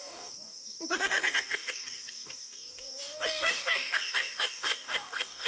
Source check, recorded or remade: remade